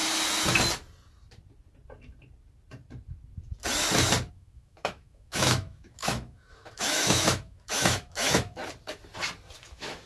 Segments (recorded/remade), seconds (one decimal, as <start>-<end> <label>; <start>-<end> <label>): 0.0-4.3 recorded; 4.3-8.6 remade; 8.6-9.7 recorded; 9.7-10.1 remade